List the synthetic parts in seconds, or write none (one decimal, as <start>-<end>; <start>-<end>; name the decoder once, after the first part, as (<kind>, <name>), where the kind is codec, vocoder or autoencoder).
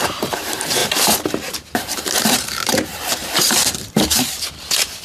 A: 0.0-0.8 (vocoder, BigVGAN v2); 1.5-5.0